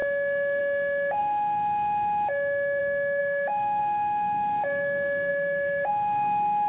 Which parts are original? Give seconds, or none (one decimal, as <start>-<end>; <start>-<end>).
0.0-3.2; 3.8-5.3; 5.9-6.7